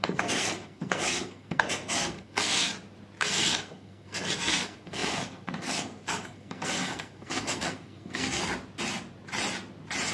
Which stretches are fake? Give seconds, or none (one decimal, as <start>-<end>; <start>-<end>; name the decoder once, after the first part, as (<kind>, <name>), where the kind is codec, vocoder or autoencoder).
0.0-2.7 (codec, SNAC); 3.2-8.4

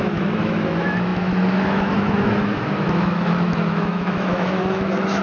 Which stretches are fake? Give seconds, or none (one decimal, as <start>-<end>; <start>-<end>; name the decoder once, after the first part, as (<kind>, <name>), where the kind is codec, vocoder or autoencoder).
0.0-5.2 (autoencoder, DAC-VAE)

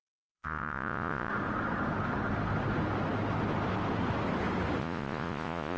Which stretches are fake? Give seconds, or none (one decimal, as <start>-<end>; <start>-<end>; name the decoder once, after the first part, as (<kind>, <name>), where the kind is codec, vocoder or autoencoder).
0.0-1.3 (vocoder, Vocos); 4.8-5.8

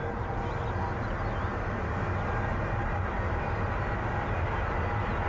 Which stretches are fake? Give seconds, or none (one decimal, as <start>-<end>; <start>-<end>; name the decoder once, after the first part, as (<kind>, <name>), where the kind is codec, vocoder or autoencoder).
none

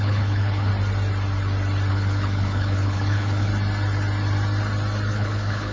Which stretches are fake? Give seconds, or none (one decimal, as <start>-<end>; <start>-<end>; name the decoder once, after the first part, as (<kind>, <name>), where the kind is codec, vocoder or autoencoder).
0.0-0.7 (codec, HILCodec); 1.9-3.5; 5.1-5.7

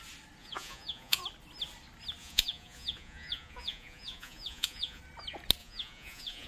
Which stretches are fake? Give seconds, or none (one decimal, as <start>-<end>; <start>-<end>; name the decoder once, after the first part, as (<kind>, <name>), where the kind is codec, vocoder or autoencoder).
0.4-1.2 (vocoder, Vocos); 2.2-5.0; 5.6-6.5